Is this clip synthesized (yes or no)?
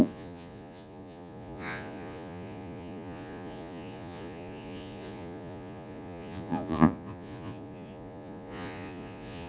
yes